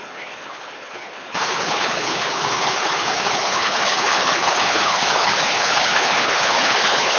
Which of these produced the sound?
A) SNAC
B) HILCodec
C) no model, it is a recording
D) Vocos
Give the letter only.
B